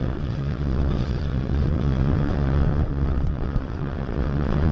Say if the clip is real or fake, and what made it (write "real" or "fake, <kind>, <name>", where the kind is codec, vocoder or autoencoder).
fake, vocoder, WaveNeXt